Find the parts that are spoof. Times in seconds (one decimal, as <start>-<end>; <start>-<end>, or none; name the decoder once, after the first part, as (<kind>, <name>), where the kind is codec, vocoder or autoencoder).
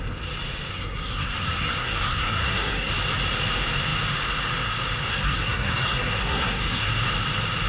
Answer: 0.7-2.9 (codec, SNAC); 5.1-6.9